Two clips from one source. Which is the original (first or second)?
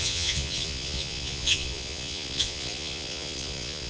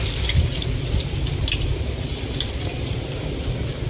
second